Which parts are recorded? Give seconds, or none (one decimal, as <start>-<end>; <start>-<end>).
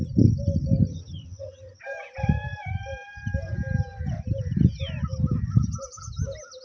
0.0-0.9; 1.8-6.6